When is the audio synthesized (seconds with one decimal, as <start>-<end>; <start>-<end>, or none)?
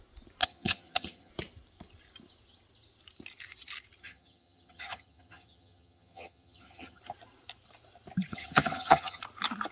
0.4-1.3; 4.0-7.0; 8.3-9.2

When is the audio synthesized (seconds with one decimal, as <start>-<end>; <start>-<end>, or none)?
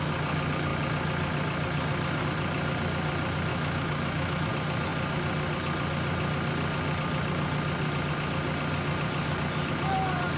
3.5-4.5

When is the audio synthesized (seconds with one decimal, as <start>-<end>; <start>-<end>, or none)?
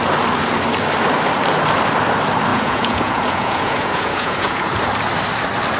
2.5-4.8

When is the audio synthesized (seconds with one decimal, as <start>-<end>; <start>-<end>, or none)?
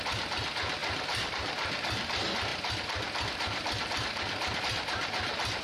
2.5-4.6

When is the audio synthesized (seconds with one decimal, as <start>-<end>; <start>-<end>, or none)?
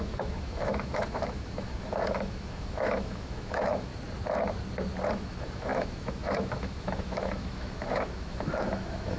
0.0-3.9; 5.1-9.2